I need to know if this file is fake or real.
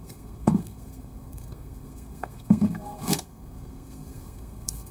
fake